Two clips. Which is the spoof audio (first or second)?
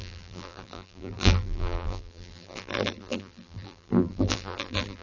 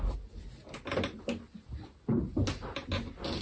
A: first